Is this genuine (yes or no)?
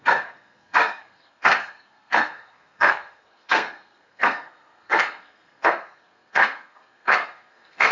no